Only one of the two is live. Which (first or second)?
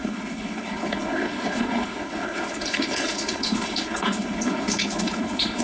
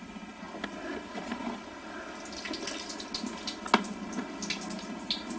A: second